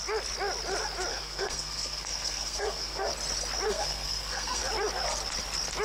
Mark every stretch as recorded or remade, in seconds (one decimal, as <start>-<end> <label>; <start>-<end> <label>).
0.0-1.1 recorded; 1.1-3.1 remade; 3.1-3.7 recorded; 3.7-4.6 remade; 4.6-5.8 recorded